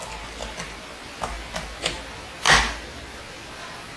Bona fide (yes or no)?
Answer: yes